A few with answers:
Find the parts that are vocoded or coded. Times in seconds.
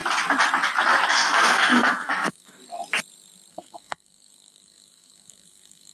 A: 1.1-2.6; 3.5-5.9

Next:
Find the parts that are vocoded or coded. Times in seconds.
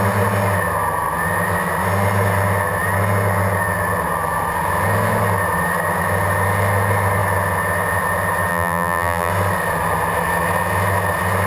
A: 8.5-9.3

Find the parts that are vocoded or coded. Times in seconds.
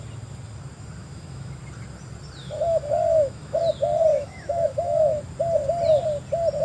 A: 1.0-1.6; 2.4-3.6; 4.1-5.2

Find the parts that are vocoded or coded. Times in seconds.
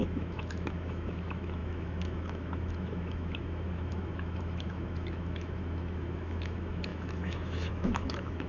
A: 0.0-8.5